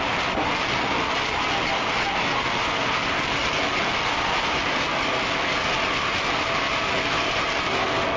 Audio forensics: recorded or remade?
recorded